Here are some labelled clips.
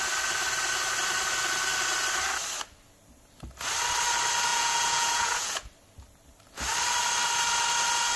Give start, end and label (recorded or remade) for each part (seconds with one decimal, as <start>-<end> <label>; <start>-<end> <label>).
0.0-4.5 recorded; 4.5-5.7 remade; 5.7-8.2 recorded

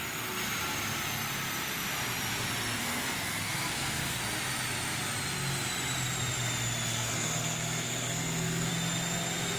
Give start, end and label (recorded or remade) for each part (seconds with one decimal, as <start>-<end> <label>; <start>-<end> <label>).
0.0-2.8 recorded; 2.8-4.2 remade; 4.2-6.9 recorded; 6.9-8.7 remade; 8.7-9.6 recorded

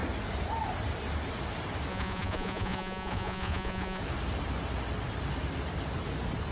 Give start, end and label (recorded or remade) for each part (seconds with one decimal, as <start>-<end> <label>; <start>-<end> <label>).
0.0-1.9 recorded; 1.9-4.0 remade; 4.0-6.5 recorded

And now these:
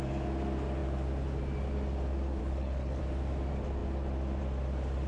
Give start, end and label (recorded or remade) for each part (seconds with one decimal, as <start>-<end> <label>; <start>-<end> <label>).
0.0-2.4 recorded; 2.4-3.0 remade; 3.0-5.1 recorded

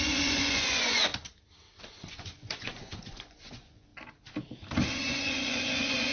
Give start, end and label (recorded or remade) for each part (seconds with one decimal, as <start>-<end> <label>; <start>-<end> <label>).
0.0-1.1 remade; 1.1-1.8 recorded; 1.8-3.9 remade; 3.9-4.9 recorded; 4.9-6.1 remade

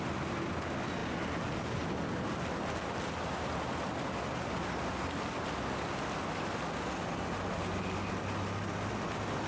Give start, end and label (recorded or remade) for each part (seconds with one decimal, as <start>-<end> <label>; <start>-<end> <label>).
0.0-9.5 recorded

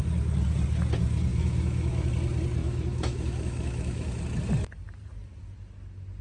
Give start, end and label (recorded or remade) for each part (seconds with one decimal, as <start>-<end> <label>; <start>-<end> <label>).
0.0-1.3 recorded; 1.3-2.1 remade; 2.1-2.6 recorded; 2.6-4.2 remade; 4.2-6.2 recorded

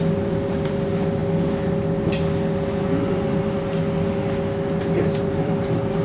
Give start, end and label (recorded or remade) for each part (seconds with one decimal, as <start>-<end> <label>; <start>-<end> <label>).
0.0-1.2 remade; 1.2-4.8 recorded; 4.8-6.0 remade